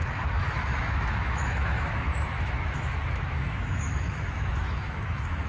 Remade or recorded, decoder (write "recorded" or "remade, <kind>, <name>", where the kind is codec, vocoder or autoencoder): remade, autoencoder, DAC-VAE